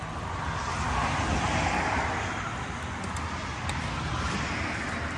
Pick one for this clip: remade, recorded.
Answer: recorded